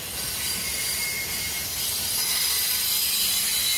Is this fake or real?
real